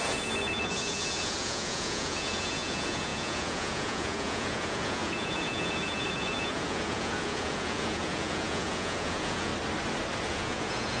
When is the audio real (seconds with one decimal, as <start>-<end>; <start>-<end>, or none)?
9.5-10.3